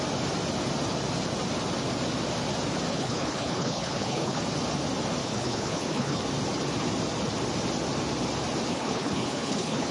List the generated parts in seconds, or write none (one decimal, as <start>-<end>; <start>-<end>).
2.9-4.4; 5.2-6.2; 8.7-9.9